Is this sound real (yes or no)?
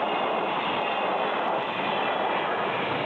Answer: yes